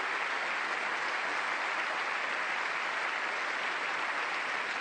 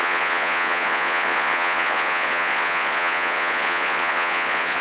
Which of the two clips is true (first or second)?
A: first